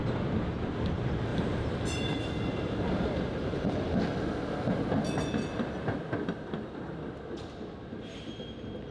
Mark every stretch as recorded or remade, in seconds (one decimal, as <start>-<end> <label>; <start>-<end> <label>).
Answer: 0.0-1.3 recorded; 1.3-4.0 remade; 4.0-8.9 recorded